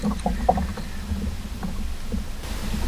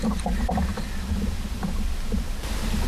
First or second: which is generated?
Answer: second